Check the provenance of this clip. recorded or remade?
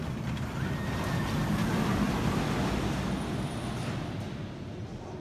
recorded